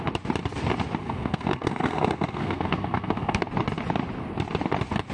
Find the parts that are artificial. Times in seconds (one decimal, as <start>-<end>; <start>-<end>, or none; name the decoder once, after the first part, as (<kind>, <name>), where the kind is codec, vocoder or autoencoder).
1.0-3.4 (codec, SNAC)